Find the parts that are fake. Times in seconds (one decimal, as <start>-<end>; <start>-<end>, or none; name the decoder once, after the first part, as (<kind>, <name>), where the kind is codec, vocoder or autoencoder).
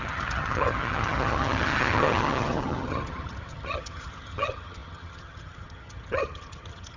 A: 0.0-7.0 (vocoder, HiFi-GAN)